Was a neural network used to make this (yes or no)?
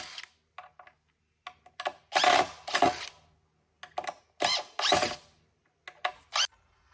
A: no